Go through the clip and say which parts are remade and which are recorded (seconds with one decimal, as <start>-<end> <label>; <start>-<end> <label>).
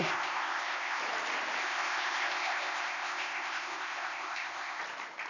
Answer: 0.0-1.0 remade; 1.0-1.6 recorded; 1.6-4.8 remade; 4.8-5.3 recorded